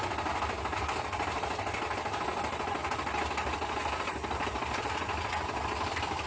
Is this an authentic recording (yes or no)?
yes